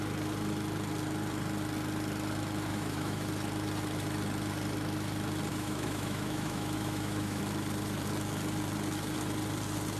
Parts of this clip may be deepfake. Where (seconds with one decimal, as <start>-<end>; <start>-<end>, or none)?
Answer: 2.7-3.3; 5.5-7.4